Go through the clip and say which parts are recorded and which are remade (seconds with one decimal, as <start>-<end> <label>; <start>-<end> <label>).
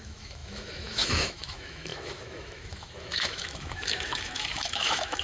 0.0-5.2 remade